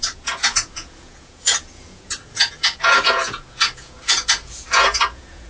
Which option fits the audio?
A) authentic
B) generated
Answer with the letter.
B